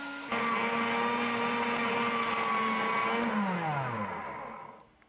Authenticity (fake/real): real